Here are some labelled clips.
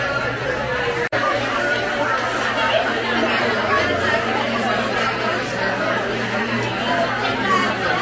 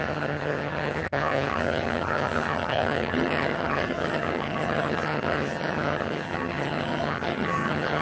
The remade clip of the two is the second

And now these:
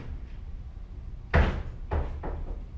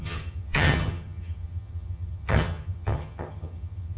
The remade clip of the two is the second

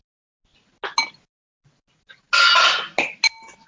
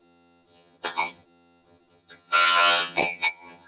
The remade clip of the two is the second